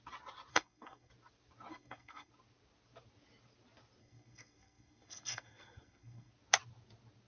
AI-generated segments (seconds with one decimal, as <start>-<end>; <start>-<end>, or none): 0.5-1.1; 1.7-2.3; 4.0-6.3